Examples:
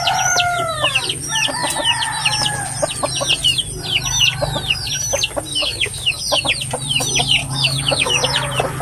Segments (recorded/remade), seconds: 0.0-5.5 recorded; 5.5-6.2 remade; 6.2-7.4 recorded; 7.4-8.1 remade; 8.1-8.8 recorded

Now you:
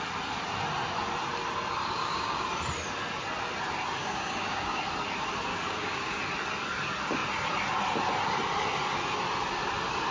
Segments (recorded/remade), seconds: 0.0-2.0 recorded; 2.0-2.5 remade; 2.5-4.0 recorded; 4.0-4.8 remade; 4.8-5.5 recorded; 5.5-6.2 remade; 6.2-10.1 recorded

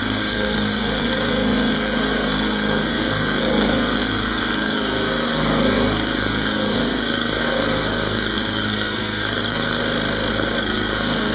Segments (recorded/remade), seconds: 0.0-9.8 remade; 9.8-10.3 recorded; 10.3-11.3 remade

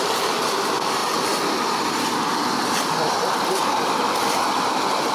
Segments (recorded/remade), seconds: 0.0-5.1 recorded

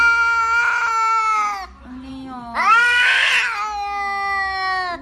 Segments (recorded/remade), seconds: 0.0-2.6 recorded; 2.6-3.3 remade; 3.3-5.0 recorded

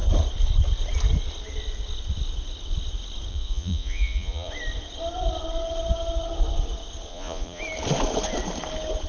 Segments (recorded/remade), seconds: 0.0-3.3 recorded; 3.3-4.5 remade; 4.5-7.1 recorded; 7.1-7.6 remade; 7.6-9.1 recorded

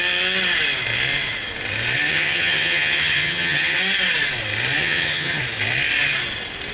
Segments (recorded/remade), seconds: 0.0-2.1 recorded; 2.1-3.8 remade; 3.8-4.8 recorded; 4.8-5.4 remade; 5.4-6.7 recorded